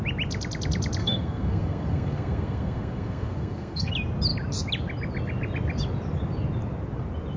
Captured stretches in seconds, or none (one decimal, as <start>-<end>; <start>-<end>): 0.0-1.0; 3.9-7.4